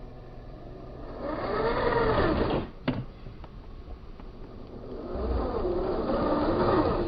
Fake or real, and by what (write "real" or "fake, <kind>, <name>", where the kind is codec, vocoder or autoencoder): real